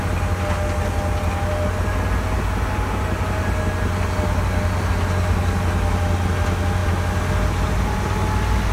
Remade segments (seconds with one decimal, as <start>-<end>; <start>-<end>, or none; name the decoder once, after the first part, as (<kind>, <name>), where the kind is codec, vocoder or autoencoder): none